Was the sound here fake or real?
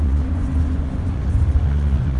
fake